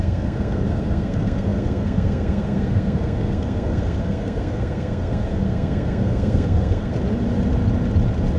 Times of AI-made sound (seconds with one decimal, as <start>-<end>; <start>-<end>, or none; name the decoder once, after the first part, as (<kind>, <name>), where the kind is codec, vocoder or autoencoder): 0.0-6.9 (codec, SNAC)